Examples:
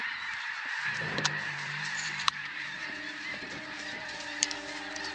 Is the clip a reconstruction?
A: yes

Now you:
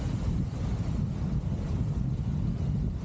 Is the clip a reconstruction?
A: no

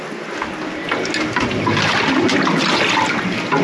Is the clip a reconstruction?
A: no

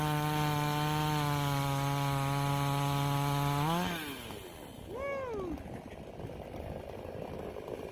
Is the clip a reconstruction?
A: no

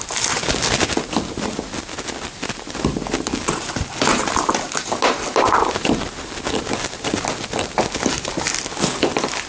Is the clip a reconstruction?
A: no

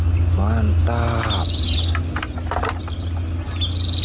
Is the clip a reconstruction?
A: no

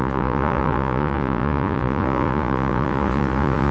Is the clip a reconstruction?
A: yes